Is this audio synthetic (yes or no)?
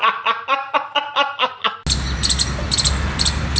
no